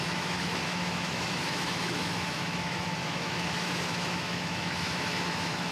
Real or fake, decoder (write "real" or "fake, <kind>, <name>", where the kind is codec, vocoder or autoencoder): fake, autoencoder, DAC-VAE